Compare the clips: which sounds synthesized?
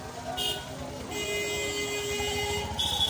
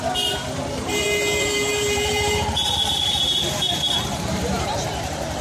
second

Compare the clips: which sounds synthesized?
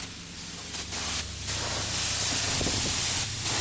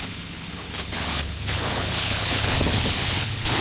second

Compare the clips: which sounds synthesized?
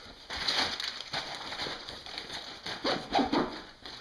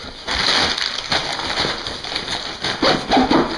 first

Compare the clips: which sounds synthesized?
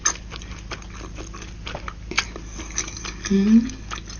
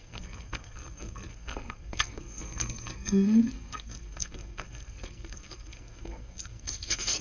second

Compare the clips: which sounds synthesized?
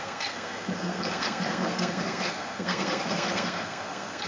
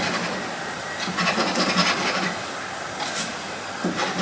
first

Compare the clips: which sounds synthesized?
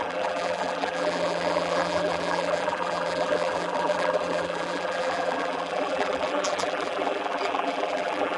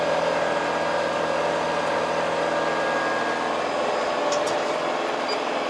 first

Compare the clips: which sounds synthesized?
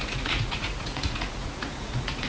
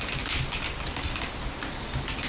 first